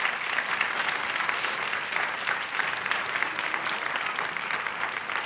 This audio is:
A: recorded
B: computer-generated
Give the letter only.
A